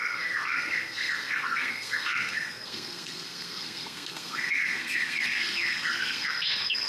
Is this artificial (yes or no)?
yes